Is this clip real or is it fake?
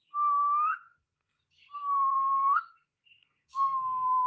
fake